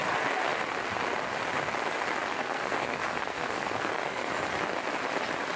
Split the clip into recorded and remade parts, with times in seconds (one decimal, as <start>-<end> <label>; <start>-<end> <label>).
0.0-2.3 recorded; 2.3-4.3 remade; 4.3-5.6 recorded